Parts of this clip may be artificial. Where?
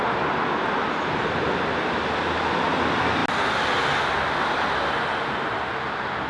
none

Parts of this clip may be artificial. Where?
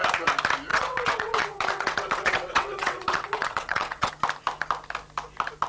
0.7-4.1 (vocoder, WaveNeXt)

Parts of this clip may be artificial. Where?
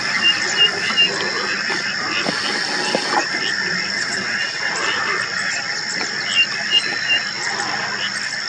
4.0-4.7 (vocoder, WaveNeXt)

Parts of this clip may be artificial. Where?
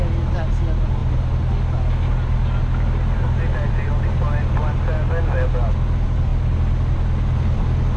none